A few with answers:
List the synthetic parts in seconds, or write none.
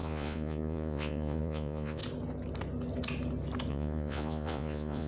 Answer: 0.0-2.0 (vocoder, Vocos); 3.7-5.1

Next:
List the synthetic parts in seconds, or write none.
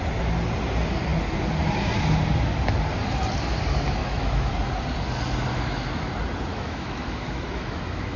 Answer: 4.0-4.5 (autoencoder, DAC-VAE); 5.5-6.1; 6.5-8.2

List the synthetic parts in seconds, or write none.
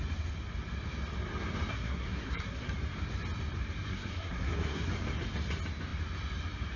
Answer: 1.7-2.7 (codec, SNAC); 3.9-4.9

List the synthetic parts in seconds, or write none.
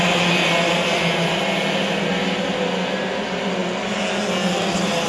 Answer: none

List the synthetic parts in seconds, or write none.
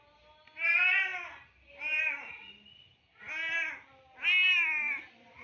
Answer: none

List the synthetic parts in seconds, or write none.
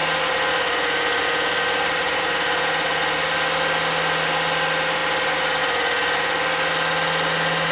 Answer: none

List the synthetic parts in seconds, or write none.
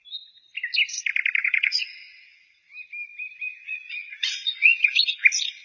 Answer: 1.4-2.7 (vocoder, Vocos); 3.5-5.1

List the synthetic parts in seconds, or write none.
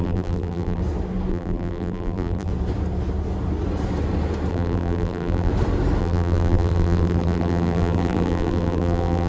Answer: 0.0-0.8 (vocoder, BigVGAN v2); 1.3-2.5; 4.5-5.5; 6.0-9.3